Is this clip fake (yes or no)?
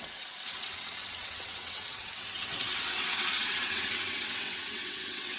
yes